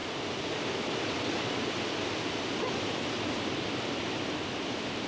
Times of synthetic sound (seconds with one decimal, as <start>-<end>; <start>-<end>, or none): none